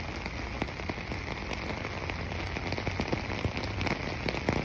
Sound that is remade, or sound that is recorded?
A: recorded